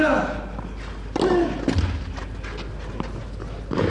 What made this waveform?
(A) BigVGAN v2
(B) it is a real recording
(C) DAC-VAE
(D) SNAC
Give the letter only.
B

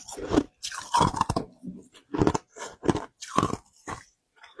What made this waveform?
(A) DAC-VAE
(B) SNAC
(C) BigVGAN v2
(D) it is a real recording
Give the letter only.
C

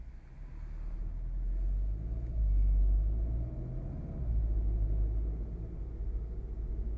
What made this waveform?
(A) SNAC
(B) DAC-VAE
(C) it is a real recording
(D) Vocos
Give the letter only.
C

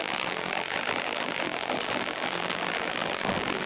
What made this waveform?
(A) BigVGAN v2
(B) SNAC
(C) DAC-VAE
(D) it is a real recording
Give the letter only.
A